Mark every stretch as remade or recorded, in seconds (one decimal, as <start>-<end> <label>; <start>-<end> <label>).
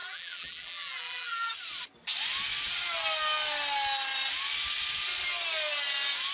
0.0-1.5 remade; 1.5-6.3 recorded